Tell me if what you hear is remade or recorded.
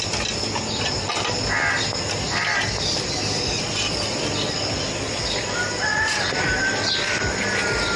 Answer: recorded